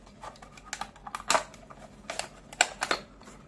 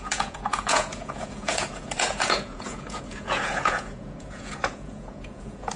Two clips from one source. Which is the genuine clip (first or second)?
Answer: first